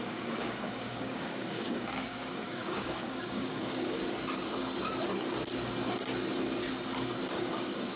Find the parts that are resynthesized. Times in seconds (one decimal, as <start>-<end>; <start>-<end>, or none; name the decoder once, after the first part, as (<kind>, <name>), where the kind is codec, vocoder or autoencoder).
0.0-4.0 (codec, DAC); 7.3-8.0

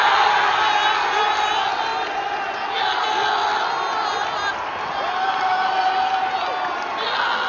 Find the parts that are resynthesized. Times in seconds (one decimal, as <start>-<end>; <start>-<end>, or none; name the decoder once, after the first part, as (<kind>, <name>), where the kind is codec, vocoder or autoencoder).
none